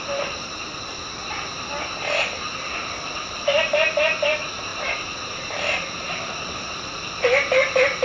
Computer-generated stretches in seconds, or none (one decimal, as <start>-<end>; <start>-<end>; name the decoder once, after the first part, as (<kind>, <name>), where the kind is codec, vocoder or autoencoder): none